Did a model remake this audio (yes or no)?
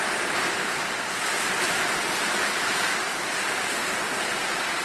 yes